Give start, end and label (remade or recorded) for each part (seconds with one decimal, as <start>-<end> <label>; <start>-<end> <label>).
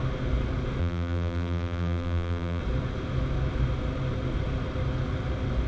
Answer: 0.0-0.8 recorded; 0.8-2.6 remade; 2.6-5.7 recorded